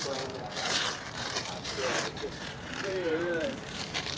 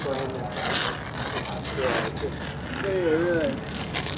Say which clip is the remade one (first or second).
first